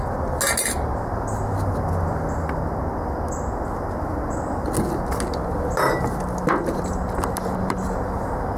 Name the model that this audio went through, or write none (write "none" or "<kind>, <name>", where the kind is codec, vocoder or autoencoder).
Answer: none